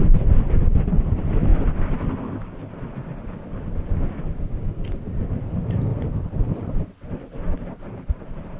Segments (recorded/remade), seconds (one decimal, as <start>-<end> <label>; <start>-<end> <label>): 0.0-1.5 remade; 1.5-5.4 recorded; 5.4-5.9 remade; 5.9-7.7 recorded; 7.7-8.6 remade